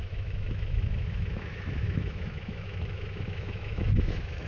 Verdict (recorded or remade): remade